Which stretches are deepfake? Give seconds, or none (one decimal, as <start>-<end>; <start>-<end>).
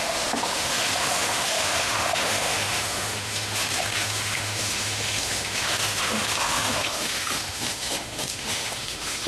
0.0-9.3